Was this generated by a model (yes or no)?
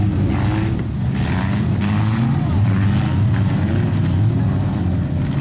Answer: no